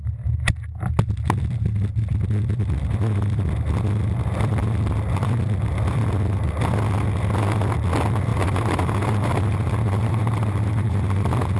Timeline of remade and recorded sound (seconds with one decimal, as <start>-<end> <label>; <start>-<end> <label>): 0.0-8.3 recorded; 8.3-11.6 remade